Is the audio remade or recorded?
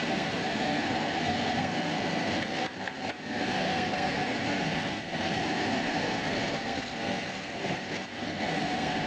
remade